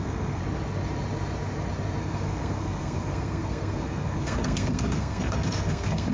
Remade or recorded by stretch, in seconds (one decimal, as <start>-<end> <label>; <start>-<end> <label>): 0.0-0.4 remade; 0.4-2.0 recorded; 2.0-6.1 remade